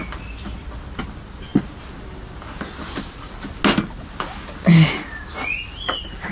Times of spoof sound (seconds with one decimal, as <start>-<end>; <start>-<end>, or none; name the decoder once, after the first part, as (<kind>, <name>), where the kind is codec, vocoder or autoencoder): none